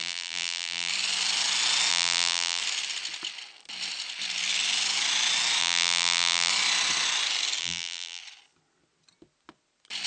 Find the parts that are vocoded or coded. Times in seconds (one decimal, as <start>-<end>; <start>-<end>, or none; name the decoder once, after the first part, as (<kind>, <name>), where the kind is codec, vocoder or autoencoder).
0.0-0.9 (vocoder, BigVGAN v2); 1.9-2.6; 5.6-6.5; 7.6-8.2